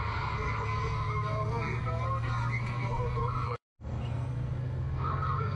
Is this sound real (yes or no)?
no